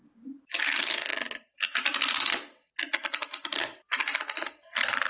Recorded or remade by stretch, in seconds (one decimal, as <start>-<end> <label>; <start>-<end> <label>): 0.0-0.6 recorded; 0.6-5.1 remade